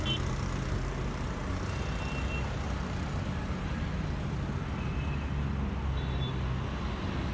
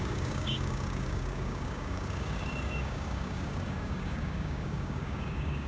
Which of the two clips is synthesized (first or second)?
second